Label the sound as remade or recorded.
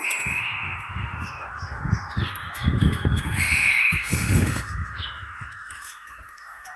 remade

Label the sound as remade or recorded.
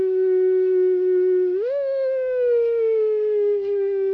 remade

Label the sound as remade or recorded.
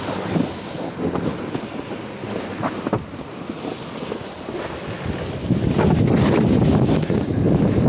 recorded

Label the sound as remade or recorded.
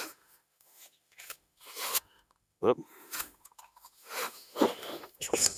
remade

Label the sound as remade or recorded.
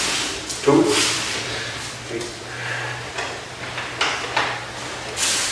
recorded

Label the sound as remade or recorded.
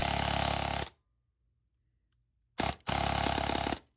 recorded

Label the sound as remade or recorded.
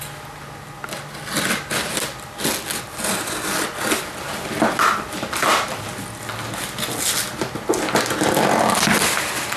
recorded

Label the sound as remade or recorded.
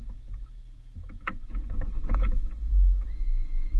remade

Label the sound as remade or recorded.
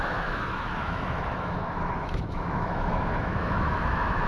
remade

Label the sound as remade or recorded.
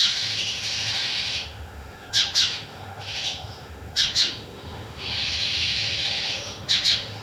remade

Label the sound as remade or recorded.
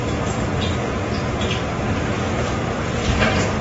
recorded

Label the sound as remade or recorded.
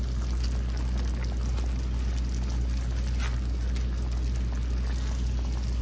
recorded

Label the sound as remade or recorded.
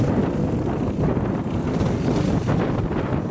recorded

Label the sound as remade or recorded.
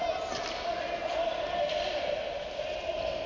recorded